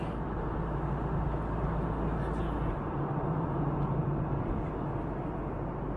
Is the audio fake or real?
real